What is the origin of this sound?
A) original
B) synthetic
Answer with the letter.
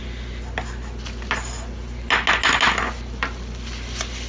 A